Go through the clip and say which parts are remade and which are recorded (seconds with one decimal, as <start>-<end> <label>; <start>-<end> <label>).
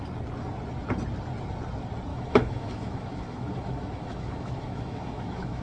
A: 0.0-2.1 recorded; 2.1-5.6 remade